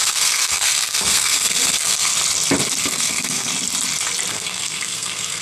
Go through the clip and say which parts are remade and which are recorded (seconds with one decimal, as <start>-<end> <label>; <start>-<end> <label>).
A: 0.0-2.1 remade; 2.1-2.8 recorded; 2.8-3.5 remade; 3.5-4.3 recorded; 4.3-5.4 remade